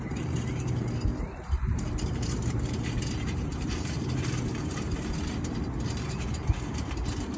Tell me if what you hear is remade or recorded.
remade